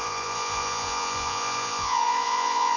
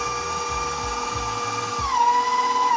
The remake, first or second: first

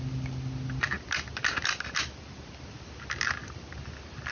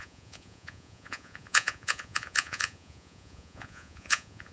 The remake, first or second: second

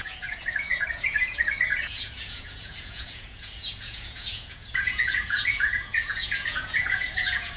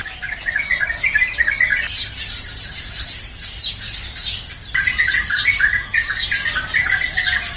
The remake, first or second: first